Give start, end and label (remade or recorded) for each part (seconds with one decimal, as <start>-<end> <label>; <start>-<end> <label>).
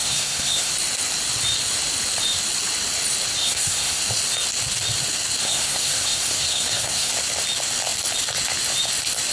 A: 0.0-0.7 remade; 0.7-3.4 recorded; 3.4-4.0 remade; 4.0-5.4 recorded; 5.4-7.1 remade; 7.1-9.3 recorded